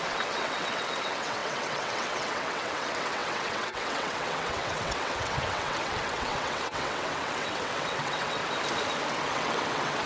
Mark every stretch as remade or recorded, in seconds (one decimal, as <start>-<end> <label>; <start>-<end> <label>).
0.0-8.4 remade; 8.4-9.1 recorded; 9.1-10.1 remade